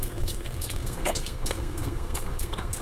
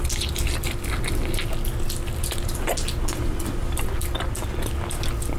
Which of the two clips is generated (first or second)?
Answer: first